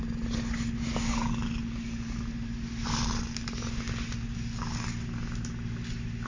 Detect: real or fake real